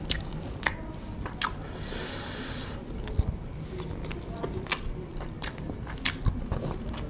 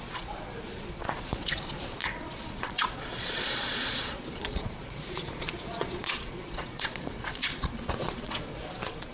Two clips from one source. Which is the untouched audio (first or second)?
first